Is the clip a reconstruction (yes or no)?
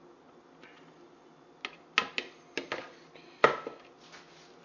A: no